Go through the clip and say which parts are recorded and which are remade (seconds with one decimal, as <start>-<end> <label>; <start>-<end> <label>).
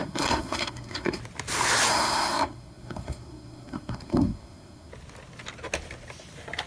0.0-1.2 remade; 1.2-1.9 recorded; 1.9-4.9 remade; 4.9-6.7 recorded